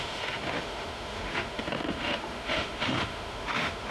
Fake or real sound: fake